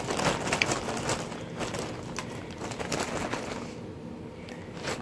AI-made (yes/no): no